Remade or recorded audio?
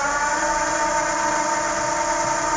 recorded